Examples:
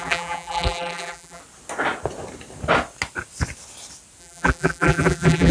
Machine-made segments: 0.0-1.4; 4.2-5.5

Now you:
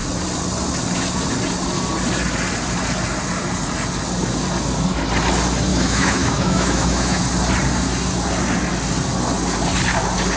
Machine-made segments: 5.7-7.2